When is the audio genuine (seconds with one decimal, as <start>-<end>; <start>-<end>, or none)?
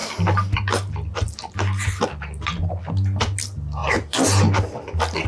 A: 0.0-5.3